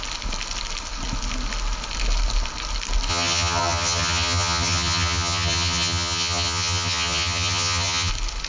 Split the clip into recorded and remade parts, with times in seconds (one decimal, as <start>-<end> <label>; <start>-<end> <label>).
0.0-3.1 recorded; 3.1-8.1 remade; 8.1-8.5 recorded